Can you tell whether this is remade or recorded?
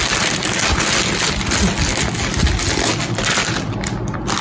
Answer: recorded